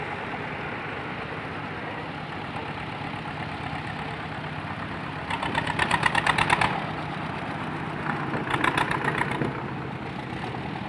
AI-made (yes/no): no